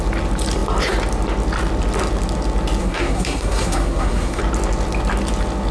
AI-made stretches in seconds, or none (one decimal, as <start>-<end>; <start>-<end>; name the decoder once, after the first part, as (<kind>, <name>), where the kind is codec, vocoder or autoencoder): 2.8-4.4 (codec, SNAC)